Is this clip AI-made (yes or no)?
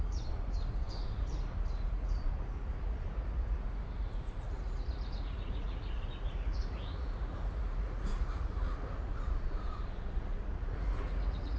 yes